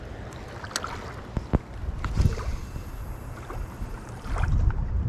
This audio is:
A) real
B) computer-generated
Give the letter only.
A